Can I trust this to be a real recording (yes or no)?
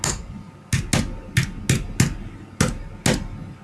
yes